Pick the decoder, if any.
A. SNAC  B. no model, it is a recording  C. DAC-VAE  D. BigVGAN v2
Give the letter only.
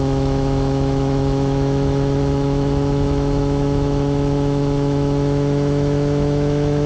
C